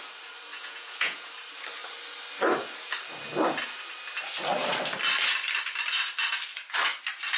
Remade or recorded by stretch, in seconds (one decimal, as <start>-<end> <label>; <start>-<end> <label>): 0.0-0.5 recorded; 0.5-1.3 remade; 1.3-7.4 recorded